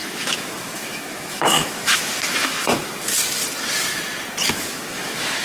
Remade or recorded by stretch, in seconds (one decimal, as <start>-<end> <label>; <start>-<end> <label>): 0.0-3.1 remade; 3.1-4.5 recorded; 4.5-5.4 remade